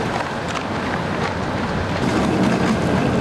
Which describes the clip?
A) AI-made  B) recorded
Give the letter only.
B